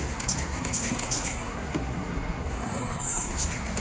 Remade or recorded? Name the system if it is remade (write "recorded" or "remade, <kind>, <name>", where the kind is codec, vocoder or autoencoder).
remade, codec, SNAC